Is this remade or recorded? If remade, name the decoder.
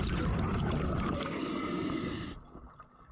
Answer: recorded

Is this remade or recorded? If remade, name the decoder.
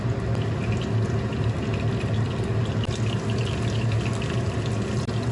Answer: recorded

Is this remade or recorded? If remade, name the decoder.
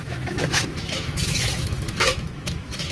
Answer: remade, autoencoder, DAC-VAE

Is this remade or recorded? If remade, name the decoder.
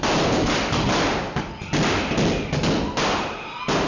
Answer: recorded